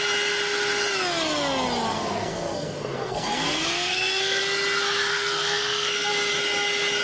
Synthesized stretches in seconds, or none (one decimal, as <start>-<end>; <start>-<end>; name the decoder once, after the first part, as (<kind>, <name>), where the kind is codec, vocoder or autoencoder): 1.9-4.4 (codec, SNAC); 5.1-6.1